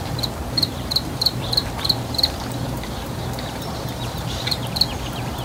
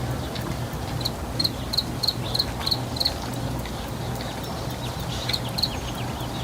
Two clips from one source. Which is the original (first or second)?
second